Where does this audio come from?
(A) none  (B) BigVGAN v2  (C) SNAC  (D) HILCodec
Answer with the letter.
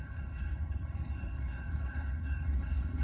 D